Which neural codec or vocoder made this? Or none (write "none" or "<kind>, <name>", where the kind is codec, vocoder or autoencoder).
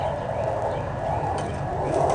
none